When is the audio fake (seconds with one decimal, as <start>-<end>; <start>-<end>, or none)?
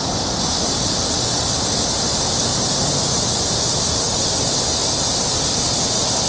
none